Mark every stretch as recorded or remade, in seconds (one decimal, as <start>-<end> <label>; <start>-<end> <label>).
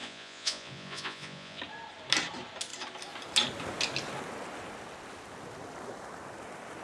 0.0-1.6 remade; 1.6-6.8 recorded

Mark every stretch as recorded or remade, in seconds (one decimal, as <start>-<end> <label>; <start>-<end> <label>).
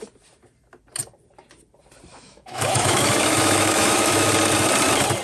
0.0-2.1 recorded; 2.1-4.3 remade; 4.3-5.2 recorded